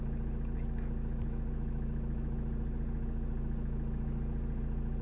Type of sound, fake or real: real